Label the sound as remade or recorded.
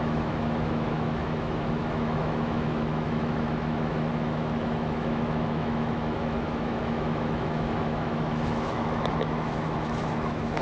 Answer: remade